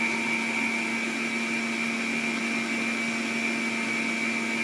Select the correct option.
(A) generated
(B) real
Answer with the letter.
B